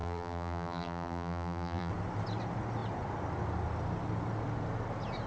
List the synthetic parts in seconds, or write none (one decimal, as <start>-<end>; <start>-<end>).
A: 0.0-1.9